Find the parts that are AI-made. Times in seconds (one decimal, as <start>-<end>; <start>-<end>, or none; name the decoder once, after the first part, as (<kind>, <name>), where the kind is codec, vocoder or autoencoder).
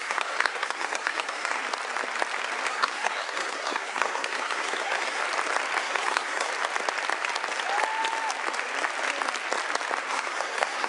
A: 0.0-1.6 (codec, SNAC); 2.7-5.2; 5.8-6.5; 10.1-10.9